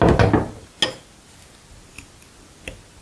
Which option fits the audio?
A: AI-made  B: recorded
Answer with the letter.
B